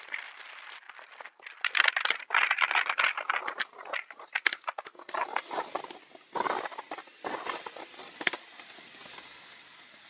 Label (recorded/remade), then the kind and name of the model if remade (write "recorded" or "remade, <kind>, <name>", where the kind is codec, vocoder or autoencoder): recorded